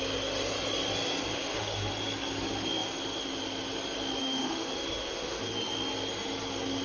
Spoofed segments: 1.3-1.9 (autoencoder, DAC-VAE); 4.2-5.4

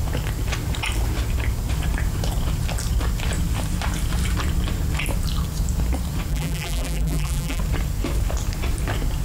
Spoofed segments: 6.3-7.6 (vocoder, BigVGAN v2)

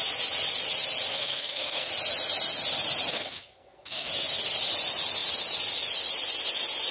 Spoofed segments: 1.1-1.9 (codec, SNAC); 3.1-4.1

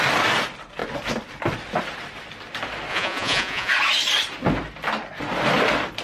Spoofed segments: 2.9-3.7 (vocoder, Vocos)